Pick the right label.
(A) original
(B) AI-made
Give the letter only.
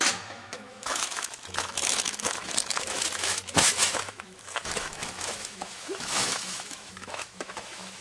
B